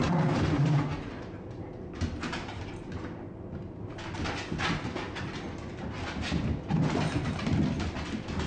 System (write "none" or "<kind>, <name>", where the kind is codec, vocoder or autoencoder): none